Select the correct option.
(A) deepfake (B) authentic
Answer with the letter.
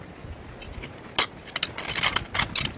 B